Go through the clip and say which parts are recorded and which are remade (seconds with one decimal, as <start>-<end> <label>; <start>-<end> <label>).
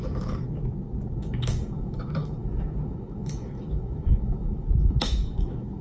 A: 0.0-5.8 remade